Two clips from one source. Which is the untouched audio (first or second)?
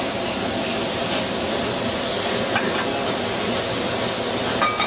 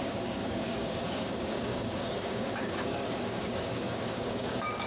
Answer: first